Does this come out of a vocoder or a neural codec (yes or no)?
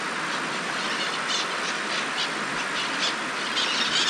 no